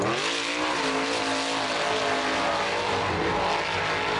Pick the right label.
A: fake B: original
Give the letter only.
B